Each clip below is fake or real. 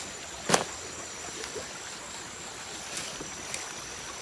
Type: real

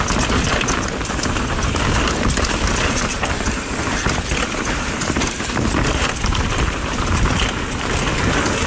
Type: real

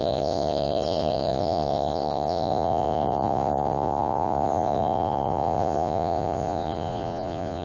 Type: fake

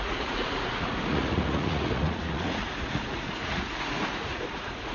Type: fake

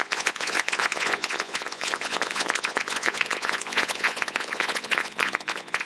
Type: fake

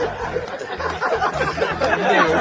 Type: real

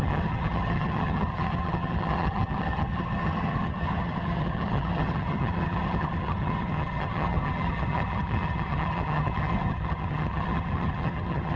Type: fake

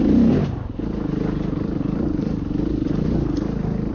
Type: real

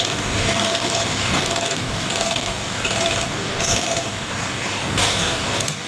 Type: fake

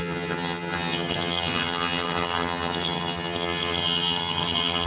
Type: fake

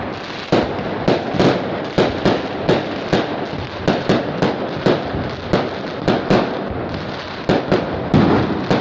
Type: real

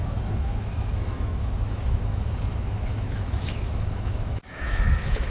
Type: fake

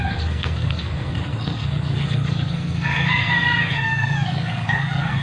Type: fake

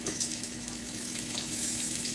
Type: fake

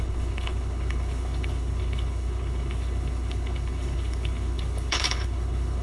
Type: fake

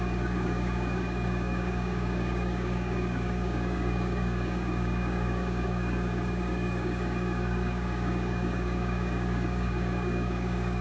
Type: fake